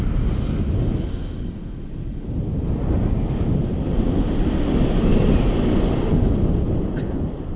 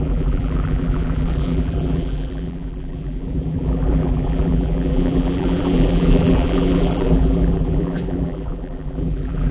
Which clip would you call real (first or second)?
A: first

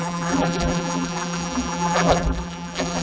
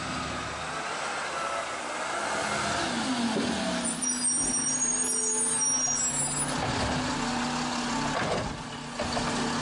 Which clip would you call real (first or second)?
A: second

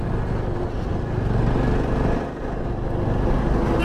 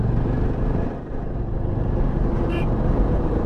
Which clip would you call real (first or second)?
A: first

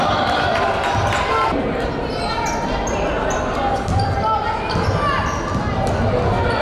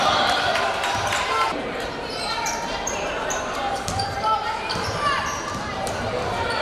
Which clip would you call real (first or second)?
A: first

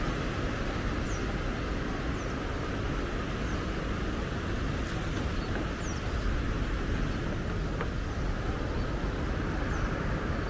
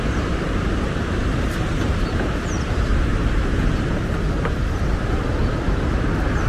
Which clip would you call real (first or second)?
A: first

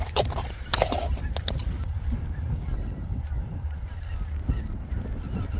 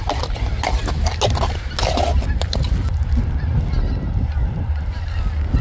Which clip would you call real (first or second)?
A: second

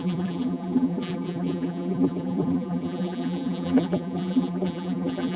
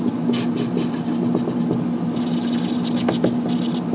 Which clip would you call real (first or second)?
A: second